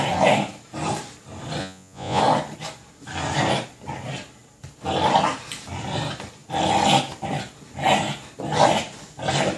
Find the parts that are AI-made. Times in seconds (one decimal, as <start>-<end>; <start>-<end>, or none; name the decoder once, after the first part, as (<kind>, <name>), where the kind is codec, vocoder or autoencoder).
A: 1.6-2.2 (vocoder, Vocos)